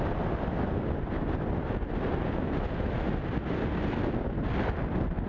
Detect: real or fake real